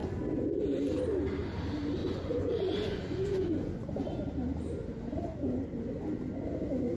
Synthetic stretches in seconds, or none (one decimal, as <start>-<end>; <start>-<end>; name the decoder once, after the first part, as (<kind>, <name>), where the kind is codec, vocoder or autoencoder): 2.0-4.1 (vocoder, Vocos)